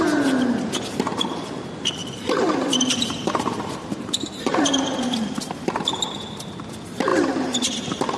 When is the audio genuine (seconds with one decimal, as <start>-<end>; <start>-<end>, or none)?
0.0-2.0; 6.0-7.1